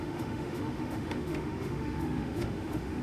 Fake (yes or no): yes